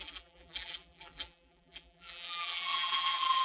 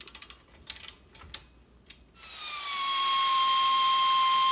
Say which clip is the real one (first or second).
second